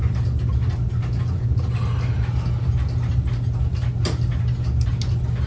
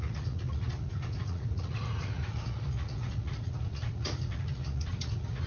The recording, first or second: first